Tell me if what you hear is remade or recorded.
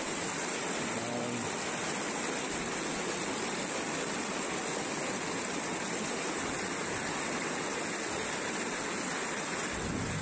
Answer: recorded